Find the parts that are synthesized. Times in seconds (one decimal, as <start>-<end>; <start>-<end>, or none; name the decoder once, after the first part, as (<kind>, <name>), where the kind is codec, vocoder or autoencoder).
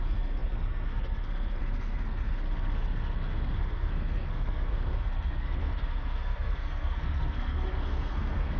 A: 0.0-8.6 (codec, SNAC)